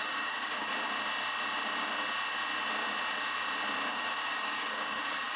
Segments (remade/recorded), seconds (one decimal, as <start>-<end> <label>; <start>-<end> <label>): 0.0-0.7 remade; 0.7-3.9 recorded; 3.9-5.4 remade